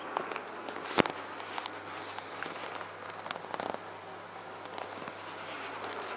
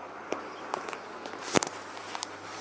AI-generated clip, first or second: second